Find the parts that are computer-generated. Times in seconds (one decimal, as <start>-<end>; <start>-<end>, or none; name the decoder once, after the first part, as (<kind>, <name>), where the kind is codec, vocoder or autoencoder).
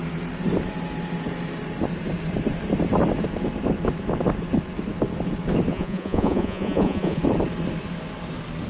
5.7-7.2 (vocoder, Vocos)